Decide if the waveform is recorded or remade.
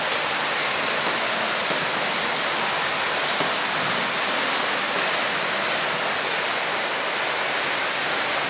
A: recorded